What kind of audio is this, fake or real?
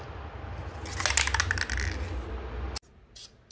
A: real